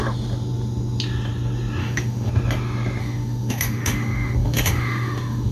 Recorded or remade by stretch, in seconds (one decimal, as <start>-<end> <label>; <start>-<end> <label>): 0.0-1.8 recorded; 1.8-2.3 remade; 2.3-3.0 recorded; 3.0-5.5 remade